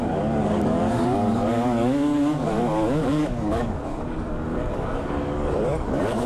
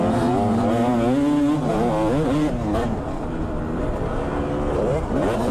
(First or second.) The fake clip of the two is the first